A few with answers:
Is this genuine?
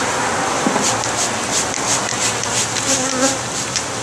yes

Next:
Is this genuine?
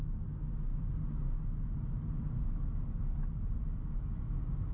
yes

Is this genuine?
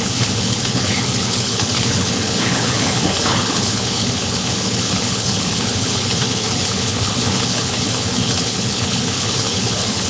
no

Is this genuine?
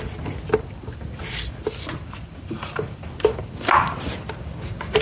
yes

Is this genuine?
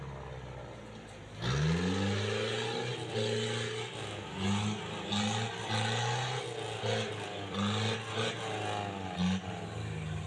yes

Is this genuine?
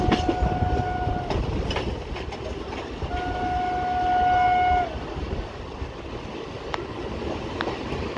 yes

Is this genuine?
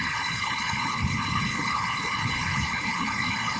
no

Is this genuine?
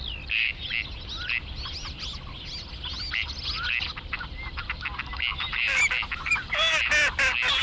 yes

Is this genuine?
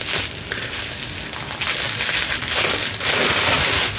yes